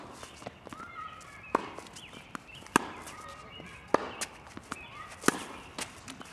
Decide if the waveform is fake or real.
real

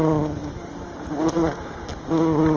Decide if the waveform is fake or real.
real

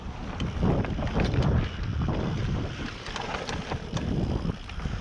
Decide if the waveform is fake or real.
real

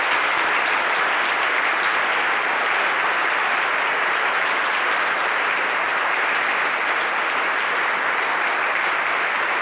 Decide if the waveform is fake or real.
real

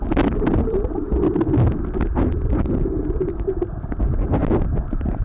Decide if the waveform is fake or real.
real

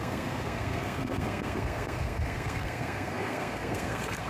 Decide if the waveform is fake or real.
fake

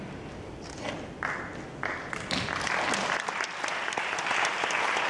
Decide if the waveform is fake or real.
real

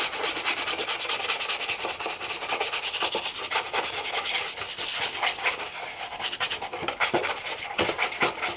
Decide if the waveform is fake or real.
real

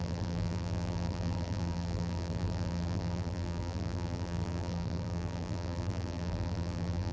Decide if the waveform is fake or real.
fake